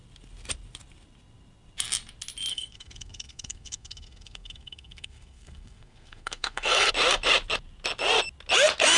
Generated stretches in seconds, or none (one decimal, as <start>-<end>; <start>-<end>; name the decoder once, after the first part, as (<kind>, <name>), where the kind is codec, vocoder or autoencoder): 2.5-6.9 (codec, SNAC)